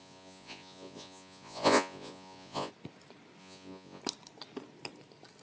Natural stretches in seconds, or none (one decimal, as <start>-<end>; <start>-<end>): 2.7-3.4; 4.0-5.4